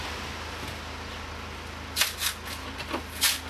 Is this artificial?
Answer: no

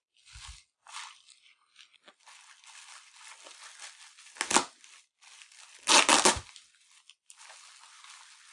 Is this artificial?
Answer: no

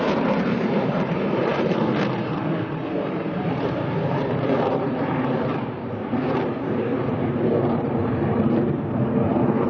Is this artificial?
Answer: yes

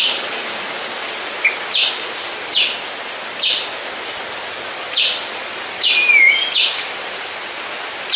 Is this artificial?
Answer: no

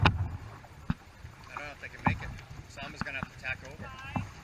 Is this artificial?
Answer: no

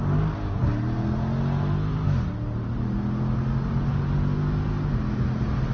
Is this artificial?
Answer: no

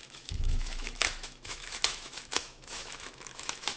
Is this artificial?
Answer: yes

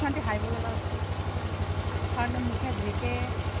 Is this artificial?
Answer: no